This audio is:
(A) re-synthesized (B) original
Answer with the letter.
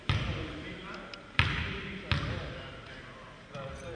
B